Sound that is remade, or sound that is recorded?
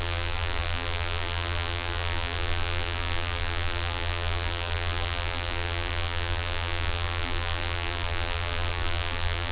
remade